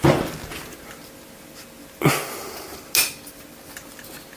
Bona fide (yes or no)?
yes